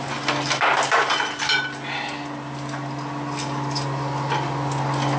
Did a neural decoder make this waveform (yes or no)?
no